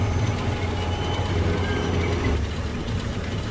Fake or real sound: real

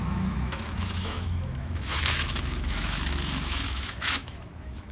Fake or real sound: fake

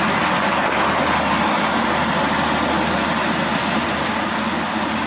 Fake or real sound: real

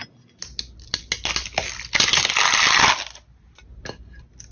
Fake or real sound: real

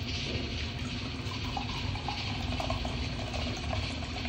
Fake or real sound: real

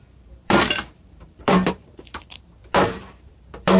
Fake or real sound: fake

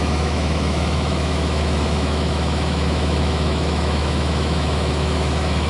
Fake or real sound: fake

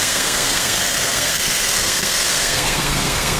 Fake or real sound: fake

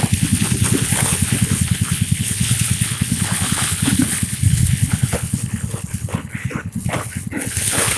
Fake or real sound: fake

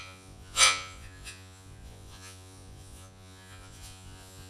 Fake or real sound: fake